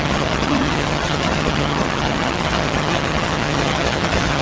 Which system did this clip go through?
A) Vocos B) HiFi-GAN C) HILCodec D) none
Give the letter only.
B